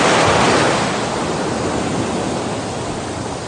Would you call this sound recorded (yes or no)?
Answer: yes